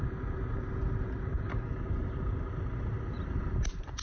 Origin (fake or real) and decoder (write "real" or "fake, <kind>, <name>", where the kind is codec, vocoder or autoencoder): real